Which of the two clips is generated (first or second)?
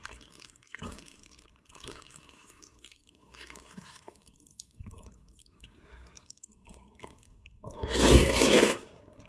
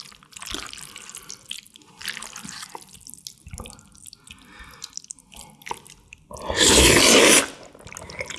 first